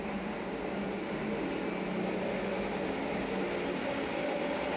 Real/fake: real